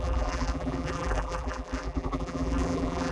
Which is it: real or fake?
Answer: fake